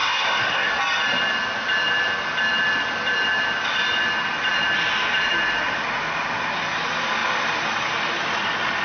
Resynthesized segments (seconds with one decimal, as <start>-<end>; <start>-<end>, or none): 0.0-0.7